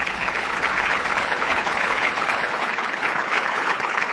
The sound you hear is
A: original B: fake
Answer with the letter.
B